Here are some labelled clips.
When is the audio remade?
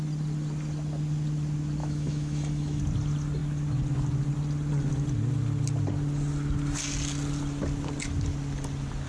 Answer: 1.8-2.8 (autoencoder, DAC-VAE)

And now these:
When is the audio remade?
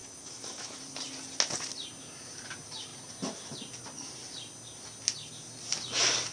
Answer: 0.0-0.8 (autoencoder, DAC-VAE)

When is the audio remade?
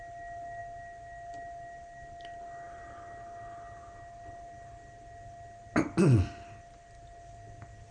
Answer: none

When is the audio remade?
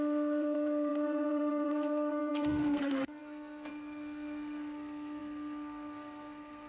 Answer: 0.0-6.7 (codec, SNAC)